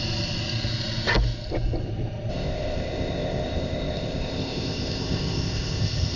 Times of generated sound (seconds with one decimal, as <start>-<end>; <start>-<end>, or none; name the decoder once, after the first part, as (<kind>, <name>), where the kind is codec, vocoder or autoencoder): 2.3-6.2 (codec, ZipCodec)